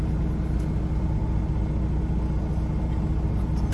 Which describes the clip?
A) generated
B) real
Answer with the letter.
B